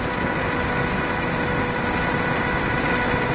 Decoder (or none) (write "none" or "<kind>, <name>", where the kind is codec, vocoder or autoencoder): none